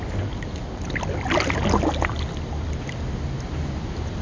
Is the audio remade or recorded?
recorded